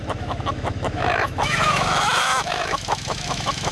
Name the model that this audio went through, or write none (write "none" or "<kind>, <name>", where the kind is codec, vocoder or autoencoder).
autoencoder, DAC-VAE